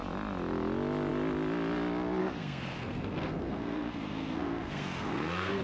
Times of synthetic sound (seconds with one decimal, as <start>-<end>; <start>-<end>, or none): 2.2-5.6